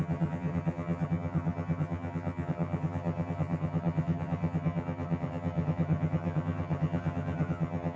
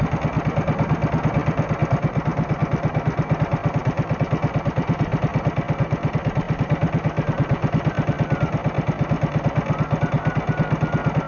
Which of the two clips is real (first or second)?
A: second